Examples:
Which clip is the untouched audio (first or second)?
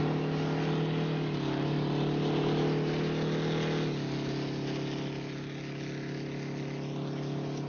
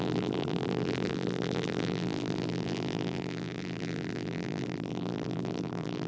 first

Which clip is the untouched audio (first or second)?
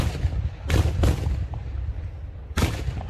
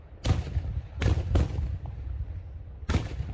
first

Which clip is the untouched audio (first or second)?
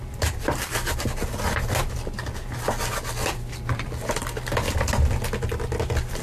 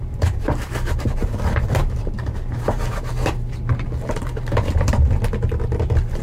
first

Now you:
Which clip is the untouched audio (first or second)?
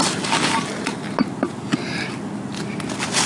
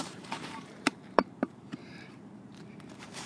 first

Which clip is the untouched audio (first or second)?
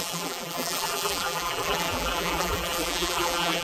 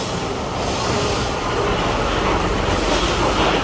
second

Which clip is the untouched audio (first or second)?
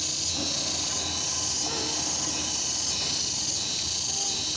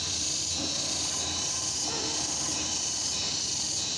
first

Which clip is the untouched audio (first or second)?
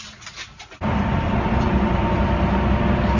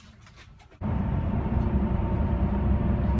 first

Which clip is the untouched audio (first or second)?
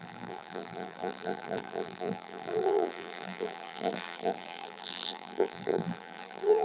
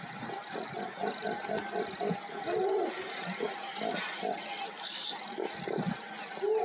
second